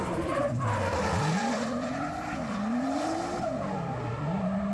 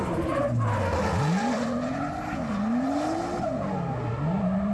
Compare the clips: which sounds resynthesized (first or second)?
first